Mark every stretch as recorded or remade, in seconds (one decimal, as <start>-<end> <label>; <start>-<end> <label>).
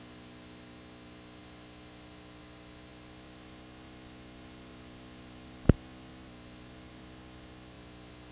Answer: 0.0-8.3 recorded